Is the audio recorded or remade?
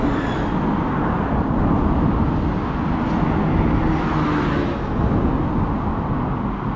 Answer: recorded